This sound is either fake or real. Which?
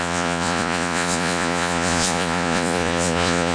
fake